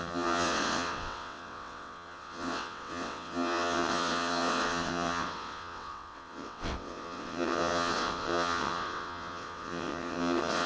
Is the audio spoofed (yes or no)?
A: yes